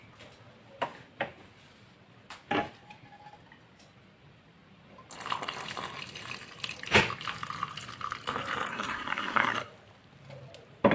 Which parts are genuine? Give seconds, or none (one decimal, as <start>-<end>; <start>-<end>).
0.0-8.7; 9.7-10.9